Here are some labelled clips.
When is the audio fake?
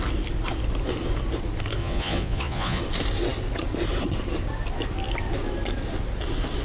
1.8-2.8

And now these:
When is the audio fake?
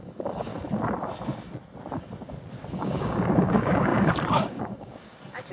0.0-0.5; 2.7-5.5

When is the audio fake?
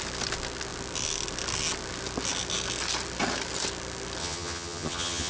4.2-5.3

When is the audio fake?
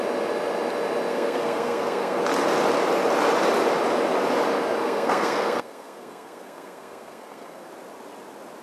1.1-2.2; 4.8-7.7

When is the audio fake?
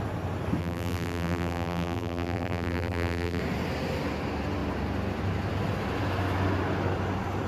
0.6-3.4